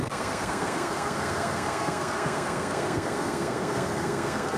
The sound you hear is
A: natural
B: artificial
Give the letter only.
B